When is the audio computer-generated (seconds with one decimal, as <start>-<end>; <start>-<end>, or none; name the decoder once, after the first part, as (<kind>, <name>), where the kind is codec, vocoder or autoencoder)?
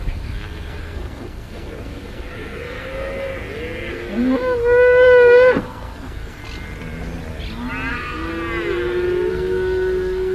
0.0-3.3 (codec, SNAC); 3.9-6.4; 7.9-8.3; 9.3-10.3